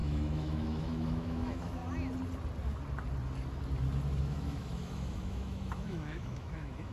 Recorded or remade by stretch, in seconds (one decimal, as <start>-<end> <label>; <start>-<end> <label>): 0.0-1.8 remade; 1.8-4.2 recorded; 4.2-6.9 remade